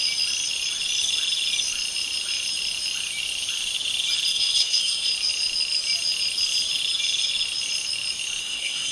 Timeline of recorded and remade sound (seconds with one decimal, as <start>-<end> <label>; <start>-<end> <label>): 0.0-4.3 recorded; 4.3-5.1 remade; 5.1-8.4 recorded; 8.4-8.9 remade